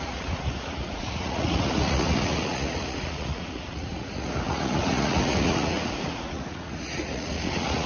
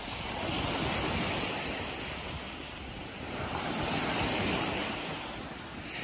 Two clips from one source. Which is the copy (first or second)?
first